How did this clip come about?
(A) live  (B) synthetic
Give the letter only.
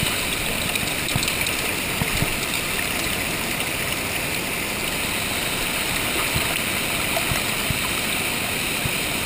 A